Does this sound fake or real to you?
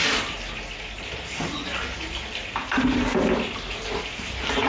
real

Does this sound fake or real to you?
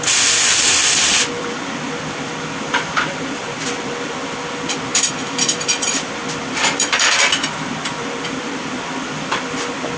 fake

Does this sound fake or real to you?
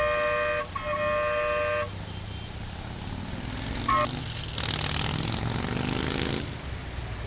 real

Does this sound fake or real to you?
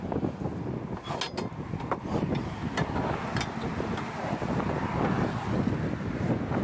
real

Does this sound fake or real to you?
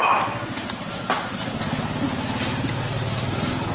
real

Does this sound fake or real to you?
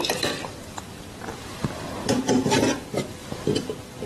fake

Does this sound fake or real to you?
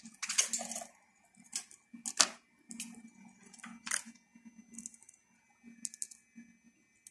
real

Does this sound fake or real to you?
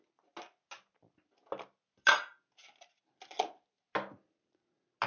real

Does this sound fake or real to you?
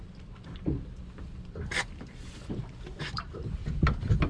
fake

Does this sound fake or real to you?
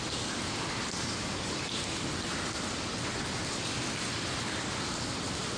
real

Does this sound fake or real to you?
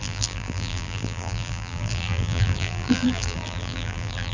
fake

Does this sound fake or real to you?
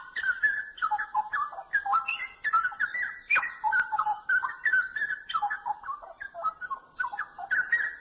real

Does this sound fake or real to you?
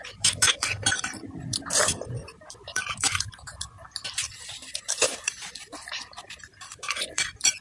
fake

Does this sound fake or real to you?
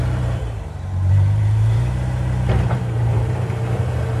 fake